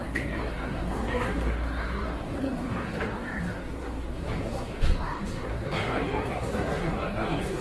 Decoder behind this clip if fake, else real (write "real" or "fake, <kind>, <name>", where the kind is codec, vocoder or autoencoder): fake, codec, SNAC